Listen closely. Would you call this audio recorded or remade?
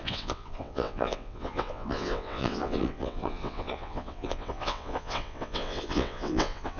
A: remade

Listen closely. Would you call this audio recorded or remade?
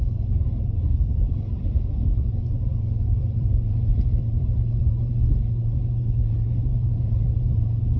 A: remade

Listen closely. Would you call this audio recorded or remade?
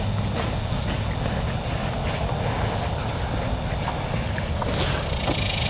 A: recorded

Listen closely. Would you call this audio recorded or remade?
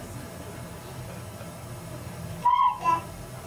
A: recorded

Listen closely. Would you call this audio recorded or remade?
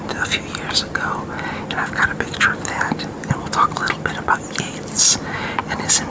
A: recorded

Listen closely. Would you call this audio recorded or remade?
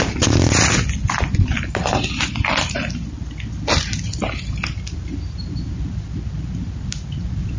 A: recorded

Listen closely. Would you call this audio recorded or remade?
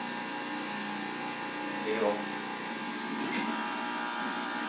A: recorded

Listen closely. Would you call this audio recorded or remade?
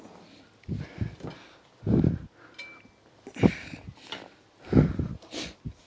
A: recorded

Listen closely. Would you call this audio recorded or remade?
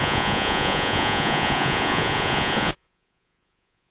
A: remade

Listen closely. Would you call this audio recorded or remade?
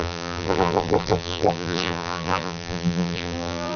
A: remade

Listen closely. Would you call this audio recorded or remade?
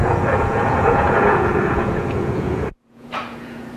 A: remade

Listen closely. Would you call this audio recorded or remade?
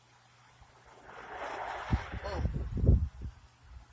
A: recorded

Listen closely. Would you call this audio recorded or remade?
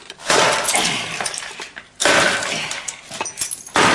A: recorded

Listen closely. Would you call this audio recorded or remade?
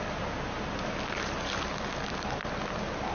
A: recorded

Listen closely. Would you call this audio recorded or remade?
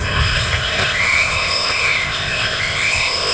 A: remade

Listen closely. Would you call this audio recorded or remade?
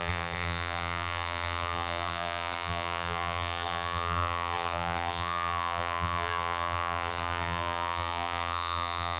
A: remade